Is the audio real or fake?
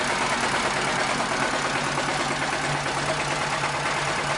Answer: real